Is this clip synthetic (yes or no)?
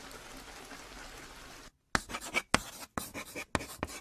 no